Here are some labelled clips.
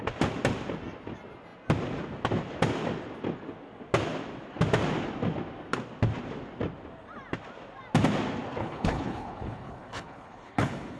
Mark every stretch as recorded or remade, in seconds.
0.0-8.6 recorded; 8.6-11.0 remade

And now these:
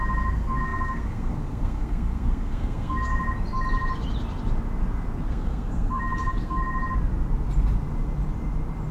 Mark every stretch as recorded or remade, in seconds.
0.0-3.1 remade; 3.1-5.3 recorded; 5.3-6.6 remade; 6.6-8.9 recorded

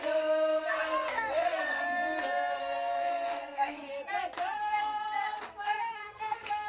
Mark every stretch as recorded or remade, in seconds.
0.0-3.9 remade; 3.9-4.5 recorded; 4.5-6.7 remade

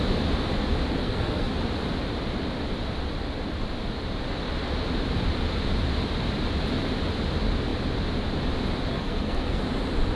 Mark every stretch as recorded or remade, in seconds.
0.0-1.0 recorded; 1.0-1.5 remade; 1.5-8.9 recorded; 8.9-9.6 remade; 9.6-10.2 recorded

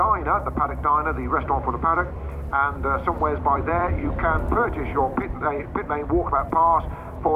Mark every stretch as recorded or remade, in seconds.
0.0-7.4 remade